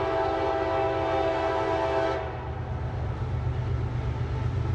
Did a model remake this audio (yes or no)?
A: no